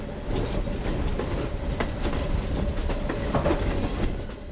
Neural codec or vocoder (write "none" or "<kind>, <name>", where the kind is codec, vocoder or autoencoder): none